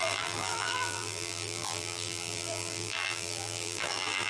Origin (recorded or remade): remade